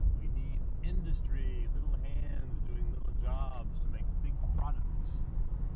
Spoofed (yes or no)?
no